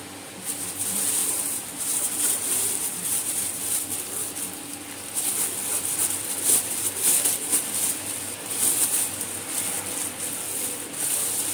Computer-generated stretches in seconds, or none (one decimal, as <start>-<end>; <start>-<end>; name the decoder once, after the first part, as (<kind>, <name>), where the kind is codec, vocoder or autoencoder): 1.2-3.9 (vocoder, BigVGAN v2)